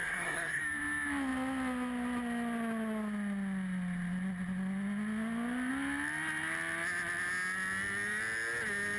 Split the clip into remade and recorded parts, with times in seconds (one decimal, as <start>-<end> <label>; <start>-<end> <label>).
0.0-0.6 remade; 0.6-9.0 recorded